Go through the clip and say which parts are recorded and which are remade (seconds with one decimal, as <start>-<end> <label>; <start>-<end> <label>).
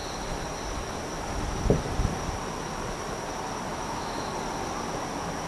0.0-3.7 recorded; 3.7-4.3 remade; 4.3-5.5 recorded